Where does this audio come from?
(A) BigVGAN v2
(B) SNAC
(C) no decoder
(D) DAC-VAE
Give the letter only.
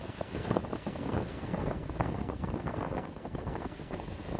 B